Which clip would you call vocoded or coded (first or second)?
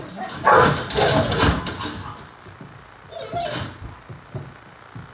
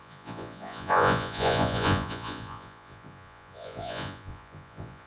second